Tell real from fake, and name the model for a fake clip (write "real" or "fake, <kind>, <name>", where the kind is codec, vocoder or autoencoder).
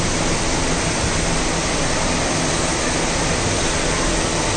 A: real